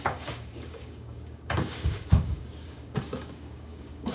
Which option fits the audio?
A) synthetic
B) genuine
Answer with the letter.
A